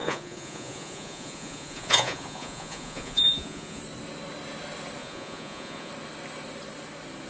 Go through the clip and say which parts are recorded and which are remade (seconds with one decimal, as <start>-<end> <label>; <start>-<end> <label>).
0.0-3.8 remade; 3.8-5.0 recorded; 5.0-5.9 remade; 5.9-7.3 recorded